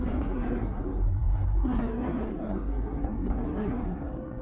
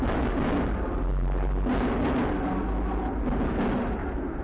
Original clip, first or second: second